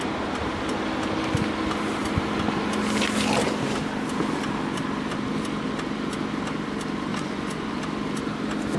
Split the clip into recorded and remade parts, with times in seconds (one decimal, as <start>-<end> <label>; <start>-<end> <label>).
0.0-7.1 recorded; 7.1-7.8 remade; 7.8-8.8 recorded